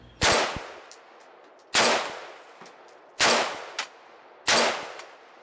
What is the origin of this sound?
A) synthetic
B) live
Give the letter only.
B